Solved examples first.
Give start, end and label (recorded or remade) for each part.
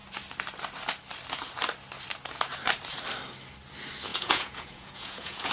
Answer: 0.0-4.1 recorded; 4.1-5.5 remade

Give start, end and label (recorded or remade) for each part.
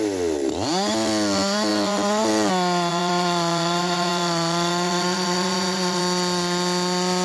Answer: 0.0-1.7 recorded; 1.7-2.5 remade; 2.5-2.9 recorded; 2.9-6.0 remade; 6.0-7.2 recorded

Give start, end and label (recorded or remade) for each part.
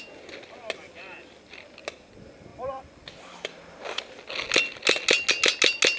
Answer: 0.0-6.0 recorded